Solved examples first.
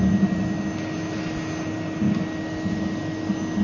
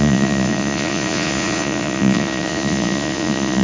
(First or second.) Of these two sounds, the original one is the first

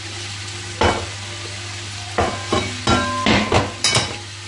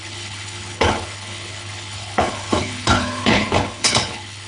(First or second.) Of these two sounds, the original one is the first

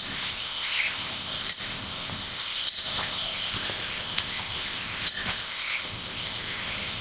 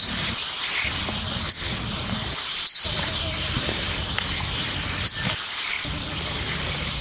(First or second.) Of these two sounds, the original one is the second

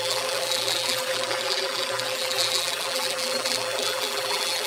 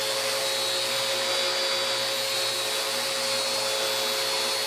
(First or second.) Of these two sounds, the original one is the second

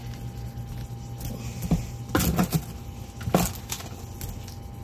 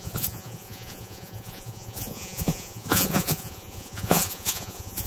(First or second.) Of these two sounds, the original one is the first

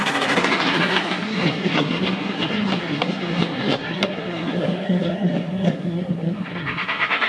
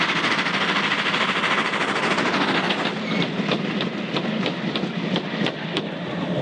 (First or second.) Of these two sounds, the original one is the second